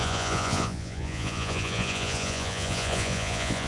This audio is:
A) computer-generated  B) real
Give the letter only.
A